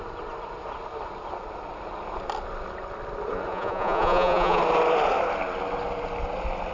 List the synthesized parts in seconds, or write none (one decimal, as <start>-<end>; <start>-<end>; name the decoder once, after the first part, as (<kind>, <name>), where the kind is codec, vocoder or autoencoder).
3.5-4.6 (vocoder, Vocos)